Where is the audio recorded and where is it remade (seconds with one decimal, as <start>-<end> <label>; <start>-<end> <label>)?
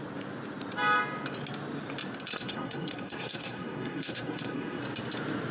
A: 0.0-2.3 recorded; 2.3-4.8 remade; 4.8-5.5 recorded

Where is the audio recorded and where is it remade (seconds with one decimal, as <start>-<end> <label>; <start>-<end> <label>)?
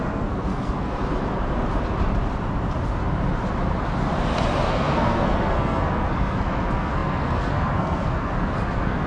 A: 0.0-1.0 remade; 1.0-4.6 recorded; 4.6-9.1 remade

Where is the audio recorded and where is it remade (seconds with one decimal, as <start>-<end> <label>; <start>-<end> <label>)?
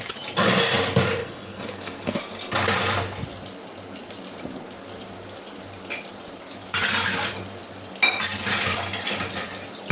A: 0.0-1.2 recorded; 1.2-2.2 remade; 2.2-9.9 recorded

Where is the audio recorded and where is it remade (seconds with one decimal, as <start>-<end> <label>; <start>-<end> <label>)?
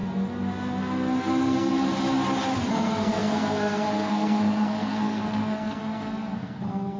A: 0.0-1.2 recorded; 1.2-1.7 remade; 1.7-2.7 recorded; 2.7-7.0 remade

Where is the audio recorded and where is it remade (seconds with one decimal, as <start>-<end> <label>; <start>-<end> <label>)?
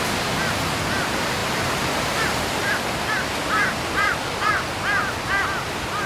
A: 0.0-6.1 recorded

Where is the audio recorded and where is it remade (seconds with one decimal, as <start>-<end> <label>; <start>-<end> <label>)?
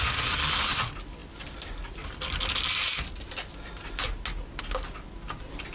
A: 0.0-5.7 recorded